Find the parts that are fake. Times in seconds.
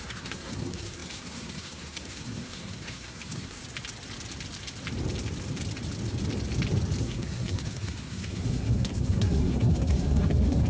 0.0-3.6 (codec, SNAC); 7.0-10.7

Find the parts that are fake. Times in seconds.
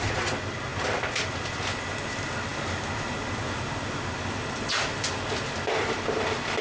none